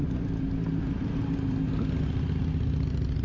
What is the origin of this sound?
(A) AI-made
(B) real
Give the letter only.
B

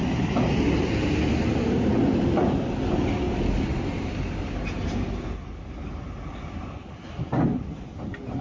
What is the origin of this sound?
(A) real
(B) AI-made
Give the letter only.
A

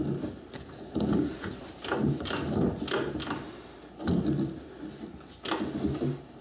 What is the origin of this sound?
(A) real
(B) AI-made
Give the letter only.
A